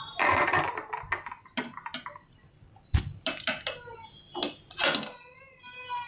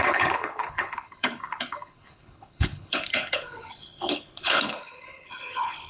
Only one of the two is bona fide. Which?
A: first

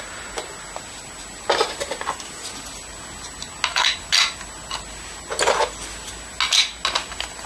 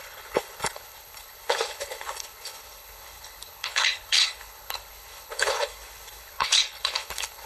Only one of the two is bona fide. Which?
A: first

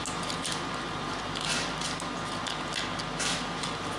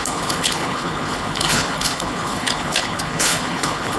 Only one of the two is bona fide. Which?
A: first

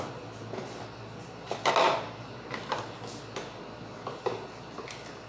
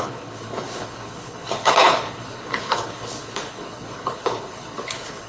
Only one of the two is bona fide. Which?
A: first